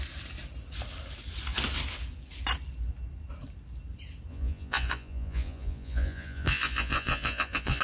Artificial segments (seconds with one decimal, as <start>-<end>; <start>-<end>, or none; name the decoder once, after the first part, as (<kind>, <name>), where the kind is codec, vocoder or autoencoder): 4.3-7.8 (vocoder, Vocos)